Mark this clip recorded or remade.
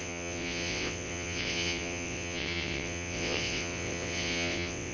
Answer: remade